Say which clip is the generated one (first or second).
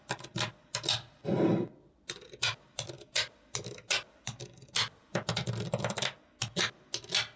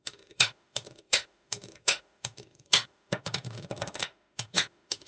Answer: second